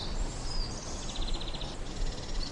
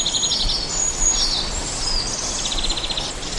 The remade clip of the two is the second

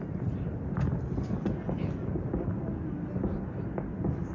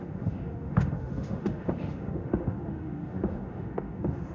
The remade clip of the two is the second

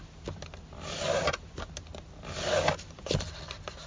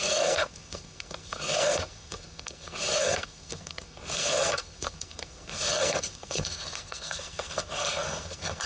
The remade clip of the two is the second